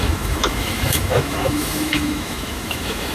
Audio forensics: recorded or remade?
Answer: remade